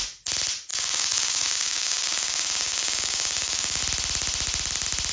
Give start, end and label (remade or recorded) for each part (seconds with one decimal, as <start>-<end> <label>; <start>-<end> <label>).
0.0-0.7 recorded; 0.7-3.8 remade; 3.8-5.1 recorded